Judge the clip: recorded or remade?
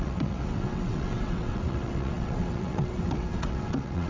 remade